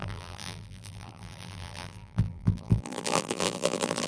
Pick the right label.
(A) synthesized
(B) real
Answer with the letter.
A